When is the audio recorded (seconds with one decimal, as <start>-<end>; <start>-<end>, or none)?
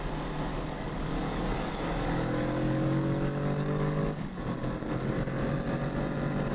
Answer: 0.0-0.5; 4.4-6.5